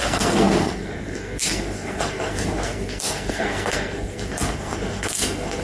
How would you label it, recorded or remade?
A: remade